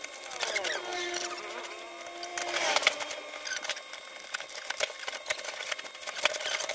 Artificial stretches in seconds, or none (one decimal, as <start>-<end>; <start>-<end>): none